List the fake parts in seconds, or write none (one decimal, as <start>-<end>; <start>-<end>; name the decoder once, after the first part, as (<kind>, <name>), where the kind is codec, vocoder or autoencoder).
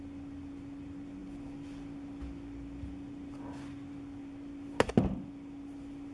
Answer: none